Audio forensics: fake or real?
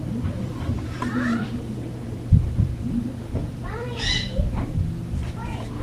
fake